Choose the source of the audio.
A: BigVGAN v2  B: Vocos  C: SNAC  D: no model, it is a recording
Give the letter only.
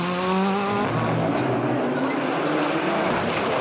D